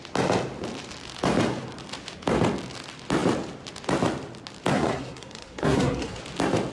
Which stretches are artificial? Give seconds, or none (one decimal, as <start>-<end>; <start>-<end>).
4.7-6.2